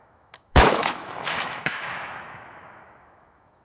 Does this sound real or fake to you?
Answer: fake